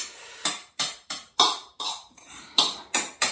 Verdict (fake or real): fake